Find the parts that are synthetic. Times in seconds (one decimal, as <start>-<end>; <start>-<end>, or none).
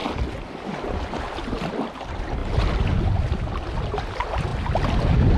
0.8-2.4; 4.1-4.5